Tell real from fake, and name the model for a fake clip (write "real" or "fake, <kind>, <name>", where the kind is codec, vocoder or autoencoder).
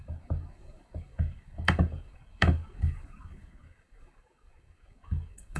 fake, codec, DAC